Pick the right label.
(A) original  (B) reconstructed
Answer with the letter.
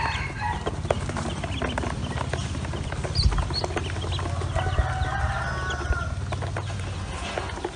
A